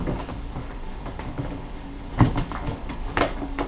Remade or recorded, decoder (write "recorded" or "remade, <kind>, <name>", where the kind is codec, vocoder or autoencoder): remade, codec, DAC